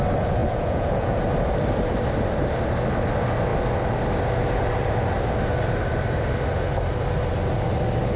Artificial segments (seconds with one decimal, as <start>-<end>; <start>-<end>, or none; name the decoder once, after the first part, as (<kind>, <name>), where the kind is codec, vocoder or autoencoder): 0.4-1.2 (vocoder, Vocos)